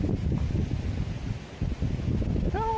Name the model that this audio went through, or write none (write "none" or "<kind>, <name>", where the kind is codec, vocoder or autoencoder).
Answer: none